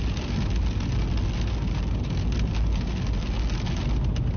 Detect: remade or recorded recorded